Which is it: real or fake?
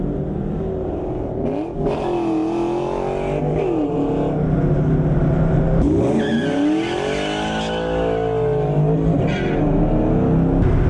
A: real